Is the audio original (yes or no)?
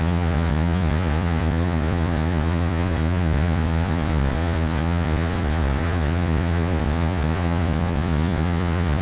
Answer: no